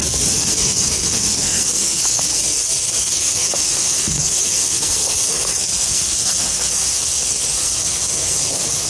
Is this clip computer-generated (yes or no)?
yes